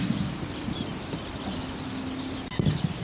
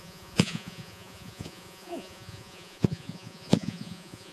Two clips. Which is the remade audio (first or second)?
second